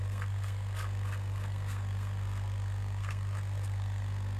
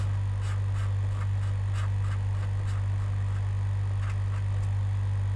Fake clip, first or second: first